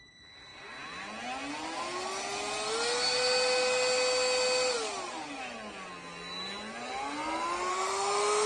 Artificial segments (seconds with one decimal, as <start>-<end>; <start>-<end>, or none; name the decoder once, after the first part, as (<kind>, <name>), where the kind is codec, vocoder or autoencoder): 7.7-8.5 (autoencoder, DAC-VAE)